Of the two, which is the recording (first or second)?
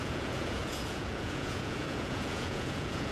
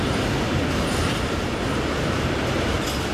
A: second